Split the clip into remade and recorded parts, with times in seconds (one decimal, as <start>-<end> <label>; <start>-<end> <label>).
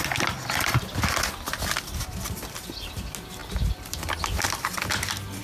0.0-5.4 recorded